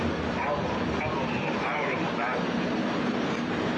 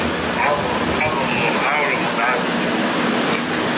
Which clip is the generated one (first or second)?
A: first